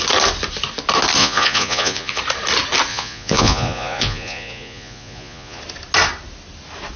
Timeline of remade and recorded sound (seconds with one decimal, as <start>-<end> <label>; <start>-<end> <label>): 0.0-1.2 recorded; 1.2-2.2 remade; 2.2-2.9 recorded; 2.9-5.6 remade; 5.6-7.0 recorded

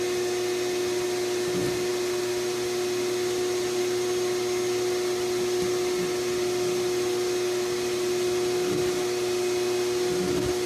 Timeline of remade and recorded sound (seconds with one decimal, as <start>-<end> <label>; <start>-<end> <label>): 0.0-10.7 recorded

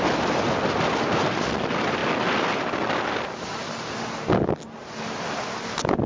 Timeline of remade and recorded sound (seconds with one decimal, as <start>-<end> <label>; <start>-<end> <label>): 0.0-6.1 recorded

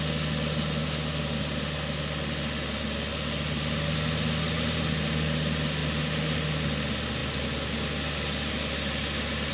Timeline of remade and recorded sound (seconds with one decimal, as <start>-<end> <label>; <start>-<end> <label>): 0.0-9.5 recorded

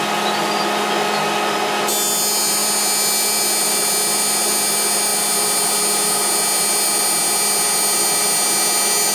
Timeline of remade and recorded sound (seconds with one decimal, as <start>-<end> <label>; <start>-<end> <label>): 0.0-9.1 recorded

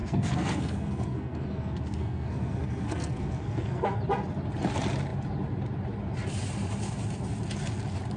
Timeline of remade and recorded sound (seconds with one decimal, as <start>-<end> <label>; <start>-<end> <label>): 0.0-4.0 remade; 4.0-8.2 recorded

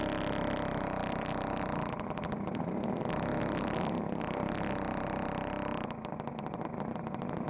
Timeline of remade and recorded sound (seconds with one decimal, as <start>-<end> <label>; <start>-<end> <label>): 0.0-7.5 recorded

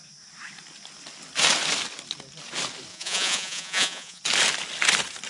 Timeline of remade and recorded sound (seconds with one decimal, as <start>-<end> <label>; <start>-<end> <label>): 0.0-2.9 recorded; 2.9-4.2 remade; 4.2-5.3 recorded